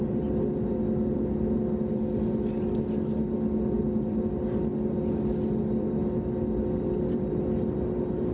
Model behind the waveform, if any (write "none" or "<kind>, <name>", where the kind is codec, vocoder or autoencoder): none